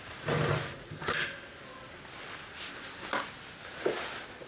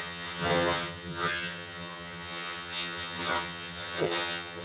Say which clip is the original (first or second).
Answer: first